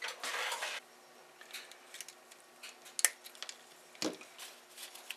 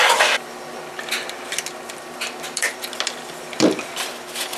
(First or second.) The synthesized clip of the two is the second